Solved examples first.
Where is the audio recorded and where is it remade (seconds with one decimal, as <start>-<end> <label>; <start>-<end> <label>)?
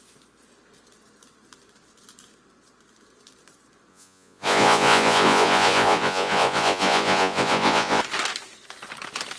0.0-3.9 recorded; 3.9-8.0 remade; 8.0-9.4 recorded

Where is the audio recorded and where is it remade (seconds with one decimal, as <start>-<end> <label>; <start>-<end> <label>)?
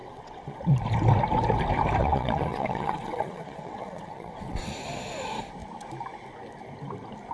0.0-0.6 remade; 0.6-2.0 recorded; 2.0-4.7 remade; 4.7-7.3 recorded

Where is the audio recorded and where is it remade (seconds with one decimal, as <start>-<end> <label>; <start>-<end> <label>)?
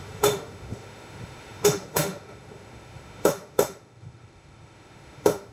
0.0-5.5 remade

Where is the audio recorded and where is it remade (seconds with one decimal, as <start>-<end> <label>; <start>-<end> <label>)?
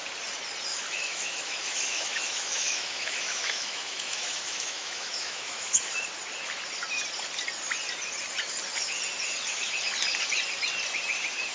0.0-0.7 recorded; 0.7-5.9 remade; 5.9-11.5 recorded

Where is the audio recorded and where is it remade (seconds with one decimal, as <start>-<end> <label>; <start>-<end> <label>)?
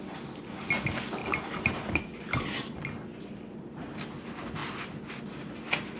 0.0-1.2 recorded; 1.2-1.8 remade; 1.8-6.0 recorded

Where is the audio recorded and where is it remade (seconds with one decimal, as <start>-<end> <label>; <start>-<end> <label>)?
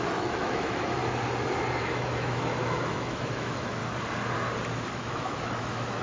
0.0-1.0 remade; 1.0-1.8 recorded; 1.8-3.8 remade; 3.8-4.9 recorded; 4.9-6.0 remade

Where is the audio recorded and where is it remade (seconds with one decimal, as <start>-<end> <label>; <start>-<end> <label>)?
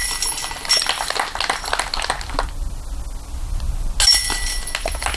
0.0-5.2 recorded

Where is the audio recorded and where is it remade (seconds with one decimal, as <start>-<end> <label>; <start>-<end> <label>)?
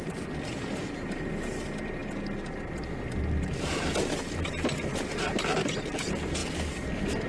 0.0-7.3 recorded